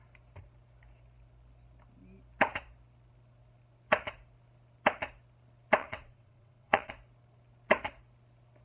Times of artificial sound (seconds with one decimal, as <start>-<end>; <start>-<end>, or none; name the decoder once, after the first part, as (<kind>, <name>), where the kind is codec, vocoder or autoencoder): 5.8-6.9 (vocoder, WaveNeXt)